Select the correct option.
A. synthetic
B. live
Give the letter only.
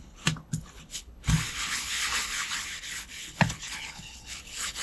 A